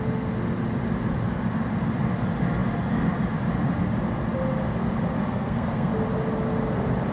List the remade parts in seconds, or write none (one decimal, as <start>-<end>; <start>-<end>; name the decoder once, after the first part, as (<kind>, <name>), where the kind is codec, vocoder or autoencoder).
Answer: 5.2-5.9 (codec, SNAC)

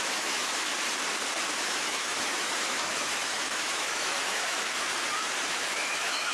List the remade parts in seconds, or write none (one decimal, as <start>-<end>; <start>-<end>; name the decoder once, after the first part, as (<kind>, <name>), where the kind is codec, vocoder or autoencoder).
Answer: 0.0-0.7 (autoencoder, DAC-VAE); 1.5-4.9; 5.5-6.3

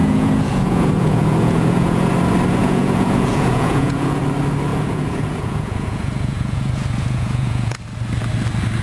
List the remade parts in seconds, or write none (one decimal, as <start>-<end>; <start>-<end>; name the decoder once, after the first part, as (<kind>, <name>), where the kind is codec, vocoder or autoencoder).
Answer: 0.0-2.1 (vocoder, Vocos); 2.6-4.2; 4.7-7.8

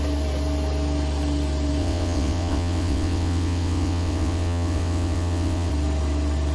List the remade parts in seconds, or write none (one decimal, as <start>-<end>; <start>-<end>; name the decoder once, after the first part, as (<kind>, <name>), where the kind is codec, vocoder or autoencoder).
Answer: 1.8-5.7 (vocoder, WaveNeXt)

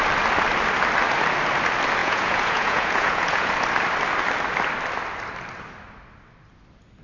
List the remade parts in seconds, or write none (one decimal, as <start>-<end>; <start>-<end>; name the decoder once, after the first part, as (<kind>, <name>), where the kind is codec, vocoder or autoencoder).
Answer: 2.0-3.5 (vocoder, Vocos)

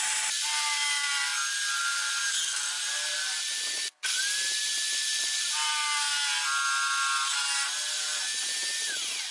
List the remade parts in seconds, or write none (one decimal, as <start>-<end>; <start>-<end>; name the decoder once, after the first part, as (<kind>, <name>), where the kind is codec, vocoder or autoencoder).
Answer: 0.0-1.3 (vocoder, BigVGAN v2); 1.8-3.8

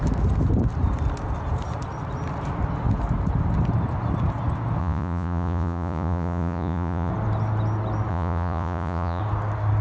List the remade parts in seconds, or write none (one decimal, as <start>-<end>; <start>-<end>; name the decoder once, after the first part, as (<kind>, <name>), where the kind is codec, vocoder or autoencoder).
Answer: 4.8-7.1 (vocoder, Vocos); 8.1-9.2